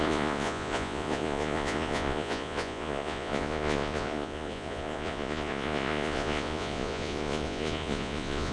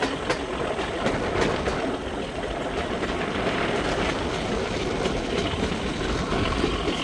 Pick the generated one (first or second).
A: first